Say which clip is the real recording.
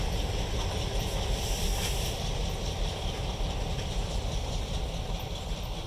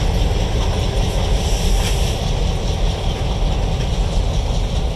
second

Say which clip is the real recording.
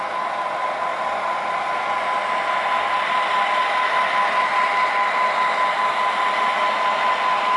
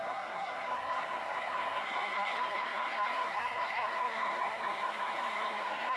first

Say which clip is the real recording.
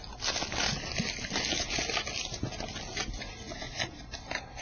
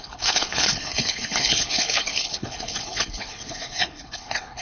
first